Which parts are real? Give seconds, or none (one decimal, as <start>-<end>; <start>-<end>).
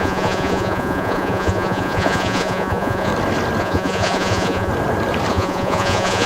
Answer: 3.1-3.6; 4.7-5.3